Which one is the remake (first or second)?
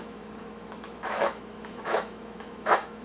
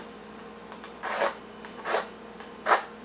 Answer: first